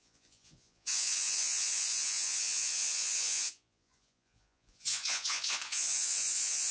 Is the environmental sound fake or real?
fake